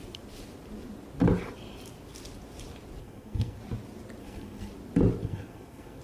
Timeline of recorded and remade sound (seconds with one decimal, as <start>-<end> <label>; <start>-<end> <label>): 0.0-3.0 recorded; 3.0-3.6 remade; 3.6-4.2 recorded; 4.2-4.7 remade; 4.7-5.2 recorded; 5.2-6.0 remade